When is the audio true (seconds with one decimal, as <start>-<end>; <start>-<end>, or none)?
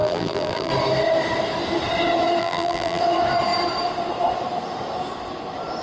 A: 0.7-2.4; 3.0-5.8